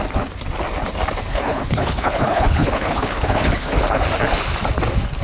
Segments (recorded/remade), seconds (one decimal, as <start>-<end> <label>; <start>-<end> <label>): 0.0-1.3 recorded; 1.3-4.0 remade; 4.0-5.2 recorded